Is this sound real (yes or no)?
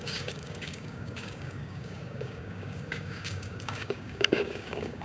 no